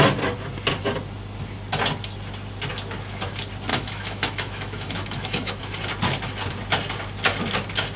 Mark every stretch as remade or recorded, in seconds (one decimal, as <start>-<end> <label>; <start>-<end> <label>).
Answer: 0.0-3.7 recorded; 3.7-5.6 remade; 5.6-8.0 recorded